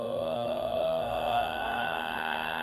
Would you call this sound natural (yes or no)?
no